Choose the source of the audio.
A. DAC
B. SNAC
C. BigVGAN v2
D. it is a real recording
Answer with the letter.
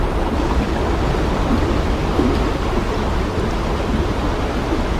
D